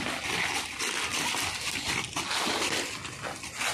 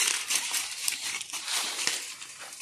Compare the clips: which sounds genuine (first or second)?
first